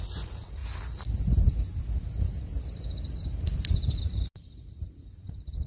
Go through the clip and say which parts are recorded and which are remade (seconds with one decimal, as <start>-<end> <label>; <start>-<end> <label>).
0.0-0.6 remade; 0.6-4.0 recorded; 4.0-5.7 remade